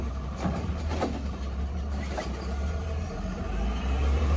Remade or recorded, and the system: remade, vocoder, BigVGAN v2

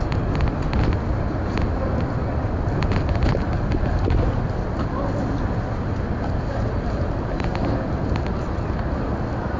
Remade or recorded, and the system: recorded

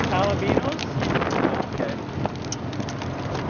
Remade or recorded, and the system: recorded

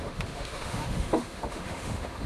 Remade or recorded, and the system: remade, autoencoder, DAC-VAE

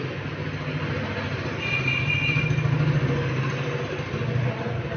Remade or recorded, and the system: recorded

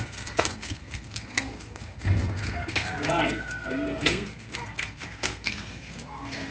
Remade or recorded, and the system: remade, codec, SNAC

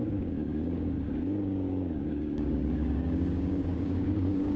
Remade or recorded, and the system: remade, codec, DAC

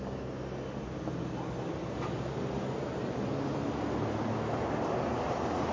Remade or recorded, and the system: recorded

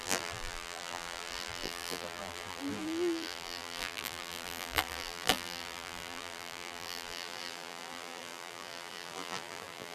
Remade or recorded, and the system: remade, vocoder, BigVGAN v2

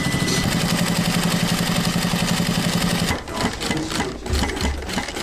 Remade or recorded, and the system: recorded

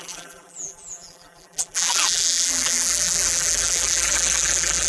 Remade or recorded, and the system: remade, vocoder, BigVGAN v2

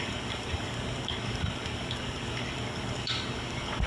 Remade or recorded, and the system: remade, codec, DAC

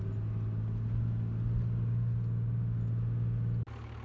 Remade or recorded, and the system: recorded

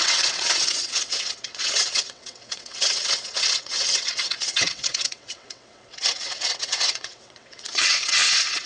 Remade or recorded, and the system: remade, vocoder, WaveNeXt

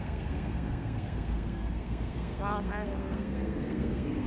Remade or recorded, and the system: remade, codec, SNAC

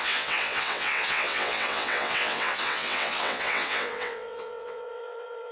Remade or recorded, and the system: remade, vocoder, WaveNeXt